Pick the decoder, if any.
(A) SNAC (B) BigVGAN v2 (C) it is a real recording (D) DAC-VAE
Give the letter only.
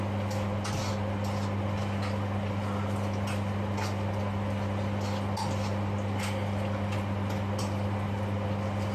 C